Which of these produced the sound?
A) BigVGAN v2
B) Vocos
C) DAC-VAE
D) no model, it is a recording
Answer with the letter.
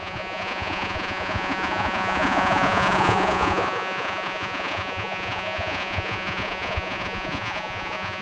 B